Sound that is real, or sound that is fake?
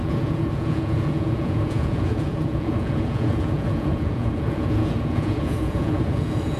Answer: fake